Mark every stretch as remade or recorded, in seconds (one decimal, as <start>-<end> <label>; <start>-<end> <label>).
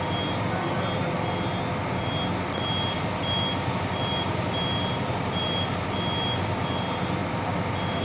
0.0-8.0 recorded